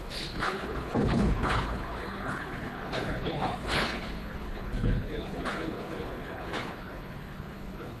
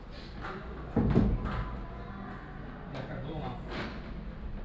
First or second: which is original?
second